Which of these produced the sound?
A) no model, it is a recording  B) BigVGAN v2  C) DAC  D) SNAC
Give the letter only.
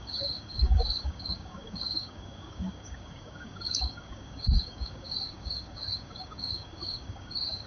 C